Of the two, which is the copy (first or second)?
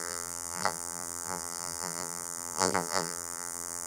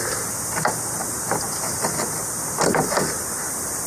first